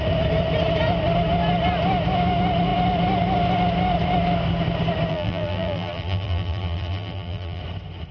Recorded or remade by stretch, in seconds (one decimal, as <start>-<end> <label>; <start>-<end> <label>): 0.0-5.1 recorded; 5.1-7.6 remade; 7.6-8.1 recorded